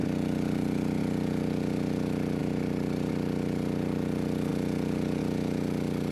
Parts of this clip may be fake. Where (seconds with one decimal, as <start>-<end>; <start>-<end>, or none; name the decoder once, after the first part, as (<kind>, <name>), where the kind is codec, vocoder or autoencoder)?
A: 0.0-1.0 (vocoder, BigVGAN v2); 2.4-3.1; 4.5-5.2